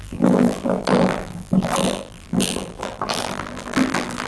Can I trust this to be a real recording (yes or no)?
no